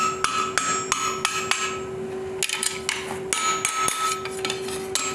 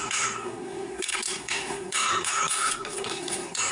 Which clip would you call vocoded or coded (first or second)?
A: second